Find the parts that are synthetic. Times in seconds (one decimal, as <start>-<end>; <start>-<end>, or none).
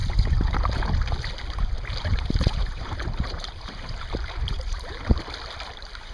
0.0-0.9; 2.1-5.1